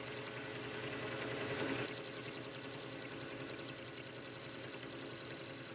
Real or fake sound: real